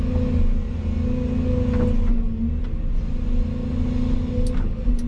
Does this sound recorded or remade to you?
recorded